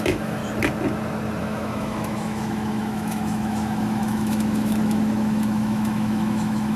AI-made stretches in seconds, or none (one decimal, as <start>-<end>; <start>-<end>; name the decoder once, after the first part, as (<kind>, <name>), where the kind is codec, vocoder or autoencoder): 0.0-0.4 (autoencoder, DAC-VAE); 1.4-6.8